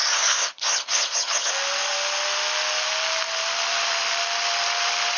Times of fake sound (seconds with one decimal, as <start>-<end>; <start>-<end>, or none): 0.0-1.5